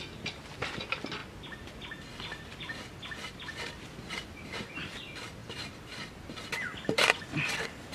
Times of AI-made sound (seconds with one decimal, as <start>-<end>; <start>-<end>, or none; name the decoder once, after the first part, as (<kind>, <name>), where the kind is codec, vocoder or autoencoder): 0.0-1.2 (vocoder, BigVGAN v2); 3.7-7.9